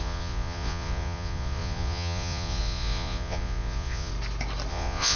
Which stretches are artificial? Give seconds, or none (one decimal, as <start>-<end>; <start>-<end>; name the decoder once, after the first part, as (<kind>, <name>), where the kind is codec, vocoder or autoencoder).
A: 0.0-4.1 (vocoder, Vocos); 4.7-5.2